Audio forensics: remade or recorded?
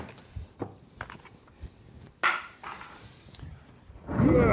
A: recorded